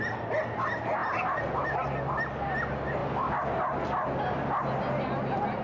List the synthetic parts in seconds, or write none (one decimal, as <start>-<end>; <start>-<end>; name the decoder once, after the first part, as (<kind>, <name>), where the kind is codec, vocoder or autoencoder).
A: 1.0-1.6 (vocoder, BigVGAN v2)